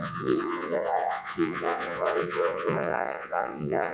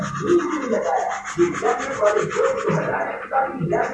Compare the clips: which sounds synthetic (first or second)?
first